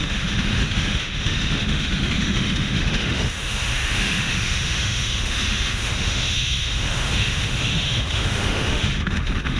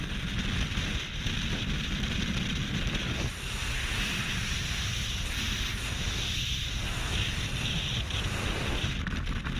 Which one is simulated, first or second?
first